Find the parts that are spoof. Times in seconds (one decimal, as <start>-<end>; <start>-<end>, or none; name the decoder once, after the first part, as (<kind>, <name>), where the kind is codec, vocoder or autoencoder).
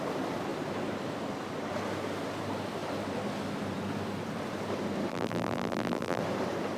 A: 5.1-6.2 (vocoder, BigVGAN v2)